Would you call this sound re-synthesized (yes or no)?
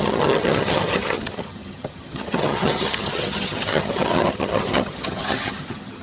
yes